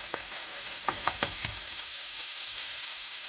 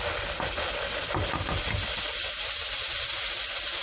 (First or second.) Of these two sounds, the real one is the second